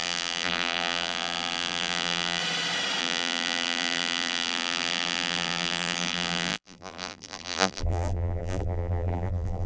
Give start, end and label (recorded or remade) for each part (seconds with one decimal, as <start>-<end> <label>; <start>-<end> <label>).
0.0-2.4 remade; 2.4-3.0 recorded; 3.0-9.7 remade